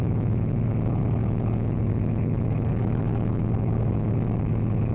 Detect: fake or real fake